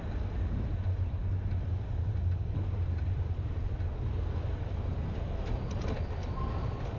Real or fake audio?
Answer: real